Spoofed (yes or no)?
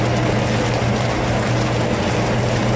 no